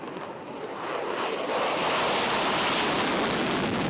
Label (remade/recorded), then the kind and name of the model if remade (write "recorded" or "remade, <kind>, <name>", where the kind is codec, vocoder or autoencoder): recorded